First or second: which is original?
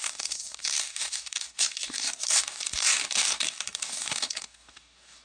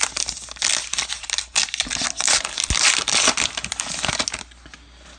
second